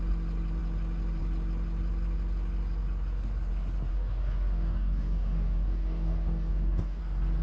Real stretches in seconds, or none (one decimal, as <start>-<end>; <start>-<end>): 0.0-3.9; 7.0-7.4